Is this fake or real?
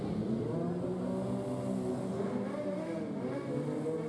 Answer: real